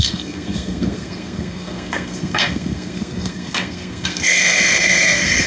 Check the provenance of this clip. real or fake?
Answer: fake